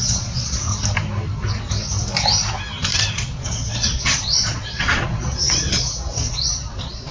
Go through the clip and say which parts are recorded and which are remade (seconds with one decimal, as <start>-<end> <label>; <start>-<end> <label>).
0.0-0.7 remade; 0.7-3.1 recorded; 3.1-7.1 remade

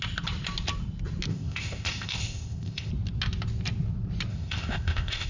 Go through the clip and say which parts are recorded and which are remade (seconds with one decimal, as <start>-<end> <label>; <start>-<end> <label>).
0.0-1.3 recorded; 1.3-2.9 remade; 2.9-4.3 recorded; 4.3-5.3 remade

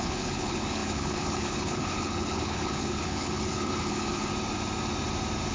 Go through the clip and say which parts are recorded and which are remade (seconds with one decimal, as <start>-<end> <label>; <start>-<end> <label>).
0.0-4.3 remade; 4.3-5.5 recorded

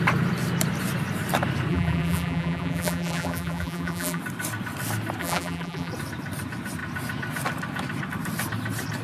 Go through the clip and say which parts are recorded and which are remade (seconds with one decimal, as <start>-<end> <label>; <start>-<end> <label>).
0.0-1.7 recorded; 1.7-4.2 remade; 4.2-5.2 recorded; 5.2-5.9 remade; 5.9-9.0 recorded

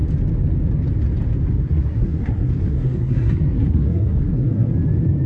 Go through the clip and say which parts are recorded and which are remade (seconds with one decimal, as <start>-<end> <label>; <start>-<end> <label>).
0.0-1.5 recorded; 1.5-4.7 remade; 4.7-5.3 recorded